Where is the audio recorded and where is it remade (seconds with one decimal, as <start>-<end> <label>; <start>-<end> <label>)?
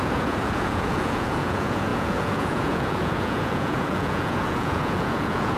0.0-5.6 remade